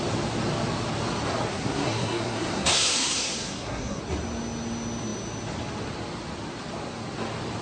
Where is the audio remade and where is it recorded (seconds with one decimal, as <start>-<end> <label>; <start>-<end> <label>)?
0.0-1.5 recorded; 1.5-4.0 remade; 4.0-7.6 recorded